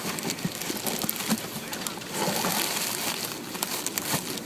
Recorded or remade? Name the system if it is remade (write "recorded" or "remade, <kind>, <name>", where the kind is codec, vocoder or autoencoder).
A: recorded